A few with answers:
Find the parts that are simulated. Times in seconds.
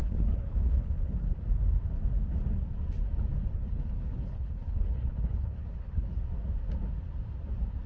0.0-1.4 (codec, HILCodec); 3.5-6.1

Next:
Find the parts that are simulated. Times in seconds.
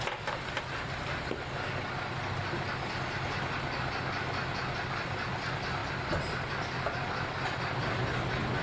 none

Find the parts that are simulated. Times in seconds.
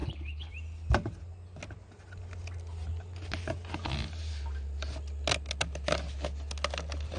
0.0-0.5 (codec, HILCodec)